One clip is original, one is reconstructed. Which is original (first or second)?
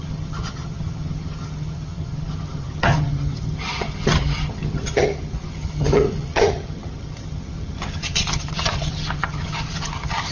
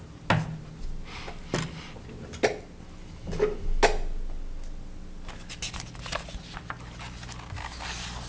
second